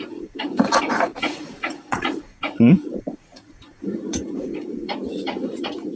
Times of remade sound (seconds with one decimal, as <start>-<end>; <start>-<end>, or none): 0.0-6.0